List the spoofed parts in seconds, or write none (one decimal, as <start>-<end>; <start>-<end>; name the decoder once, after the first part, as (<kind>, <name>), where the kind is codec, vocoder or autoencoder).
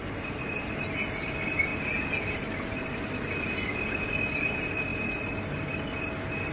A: none